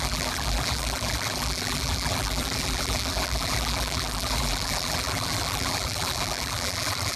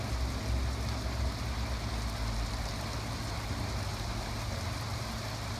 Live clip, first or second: second